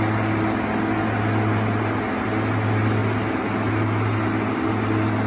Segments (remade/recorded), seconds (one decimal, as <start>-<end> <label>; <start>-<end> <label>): 0.0-5.3 recorded